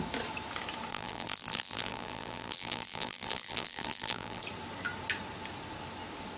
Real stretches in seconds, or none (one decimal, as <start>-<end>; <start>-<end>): 0.0-0.9; 4.4-6.4

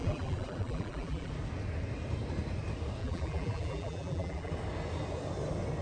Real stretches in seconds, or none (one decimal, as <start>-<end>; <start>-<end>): 1.3-3.0; 4.5-5.8